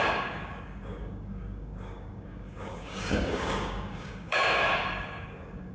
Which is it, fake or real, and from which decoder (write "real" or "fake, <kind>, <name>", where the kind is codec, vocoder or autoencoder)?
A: fake, codec, DAC